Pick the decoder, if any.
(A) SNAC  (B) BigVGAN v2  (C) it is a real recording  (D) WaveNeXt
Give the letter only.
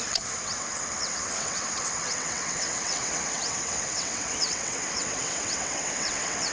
D